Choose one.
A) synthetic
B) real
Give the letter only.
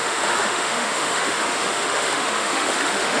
A